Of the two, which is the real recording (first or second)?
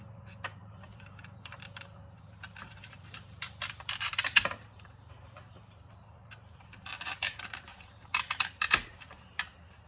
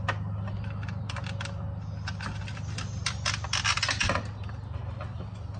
second